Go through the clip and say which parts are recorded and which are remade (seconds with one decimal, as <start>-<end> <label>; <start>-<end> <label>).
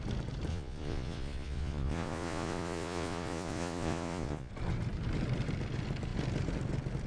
0.0-0.5 recorded; 0.5-4.5 remade; 4.5-7.1 recorded